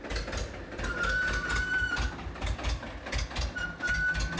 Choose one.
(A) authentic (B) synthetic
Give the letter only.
A